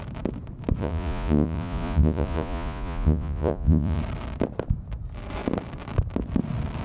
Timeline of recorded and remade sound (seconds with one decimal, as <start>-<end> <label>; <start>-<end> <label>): 0.0-0.8 recorded; 0.8-4.0 remade; 4.0-6.8 recorded